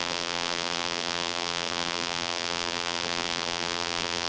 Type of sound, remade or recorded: remade